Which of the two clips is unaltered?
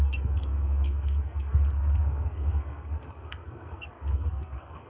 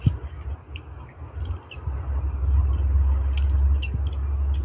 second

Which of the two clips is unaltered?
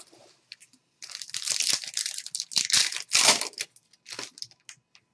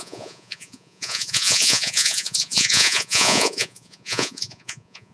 first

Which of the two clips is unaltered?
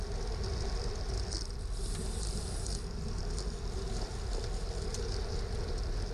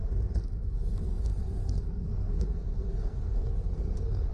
first